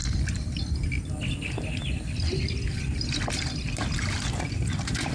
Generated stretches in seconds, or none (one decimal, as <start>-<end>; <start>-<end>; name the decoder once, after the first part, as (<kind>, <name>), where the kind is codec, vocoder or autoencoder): none